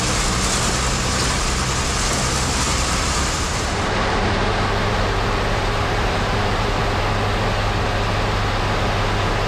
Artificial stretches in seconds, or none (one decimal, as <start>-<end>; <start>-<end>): 2.7-6.8